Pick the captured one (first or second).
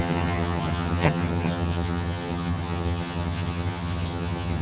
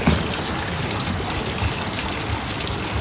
second